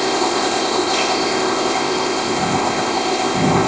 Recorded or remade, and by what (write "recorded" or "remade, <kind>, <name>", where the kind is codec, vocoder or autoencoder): remade, codec, ZipCodec